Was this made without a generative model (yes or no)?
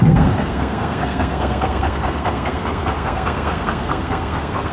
no